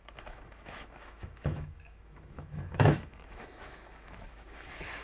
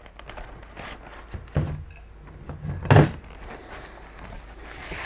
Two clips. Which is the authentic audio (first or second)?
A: second